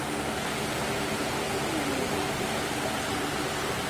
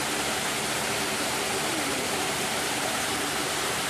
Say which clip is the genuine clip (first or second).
first